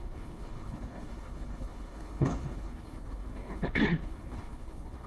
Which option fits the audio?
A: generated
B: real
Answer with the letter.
A